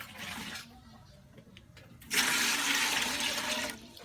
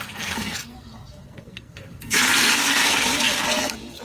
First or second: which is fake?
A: second